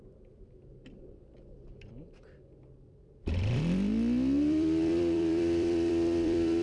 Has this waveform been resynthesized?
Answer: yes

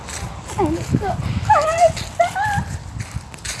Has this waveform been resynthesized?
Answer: no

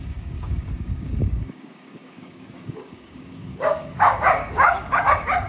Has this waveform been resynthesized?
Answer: yes